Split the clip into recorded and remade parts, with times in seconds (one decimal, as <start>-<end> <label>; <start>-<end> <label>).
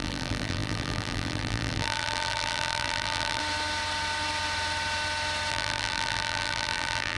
0.0-3.4 remade; 3.4-5.5 recorded; 5.5-7.2 remade